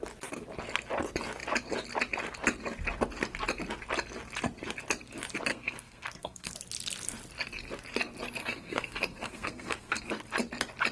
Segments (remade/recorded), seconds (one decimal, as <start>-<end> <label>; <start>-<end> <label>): 0.0-5.5 recorded; 5.5-6.5 remade; 6.5-8.4 recorded; 8.4-10.0 remade; 10.0-10.9 recorded